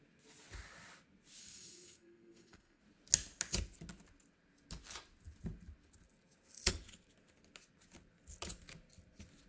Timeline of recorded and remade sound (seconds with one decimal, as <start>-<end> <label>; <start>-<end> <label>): 0.0-1.4 recorded; 1.4-2.8 remade; 2.8-9.5 recorded